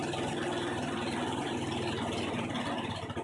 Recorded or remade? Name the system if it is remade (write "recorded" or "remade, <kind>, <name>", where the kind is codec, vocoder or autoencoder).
recorded